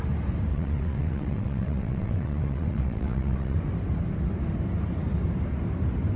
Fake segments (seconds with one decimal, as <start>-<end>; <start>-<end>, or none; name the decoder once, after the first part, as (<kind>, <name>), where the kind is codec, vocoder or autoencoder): 0.5-3.6 (vocoder, WaveNeXt)